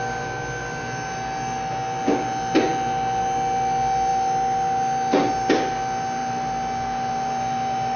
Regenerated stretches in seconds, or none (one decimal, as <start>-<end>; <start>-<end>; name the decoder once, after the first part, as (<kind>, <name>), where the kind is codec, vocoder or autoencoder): none